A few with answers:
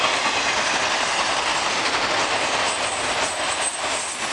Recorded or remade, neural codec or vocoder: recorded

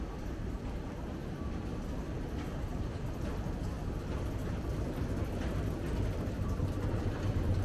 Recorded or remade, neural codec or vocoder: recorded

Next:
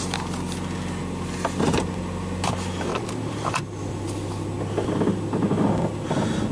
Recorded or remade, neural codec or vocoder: recorded